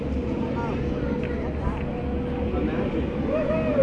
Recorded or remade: recorded